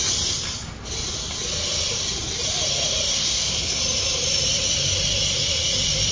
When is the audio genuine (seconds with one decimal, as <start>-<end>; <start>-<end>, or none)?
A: 0.0-3.1; 3.8-6.1